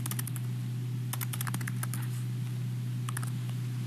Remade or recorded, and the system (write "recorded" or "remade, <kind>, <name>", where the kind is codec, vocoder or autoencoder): recorded